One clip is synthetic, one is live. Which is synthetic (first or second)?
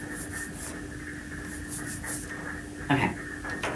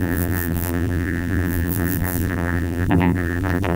second